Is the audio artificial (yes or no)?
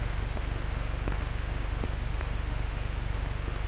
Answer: yes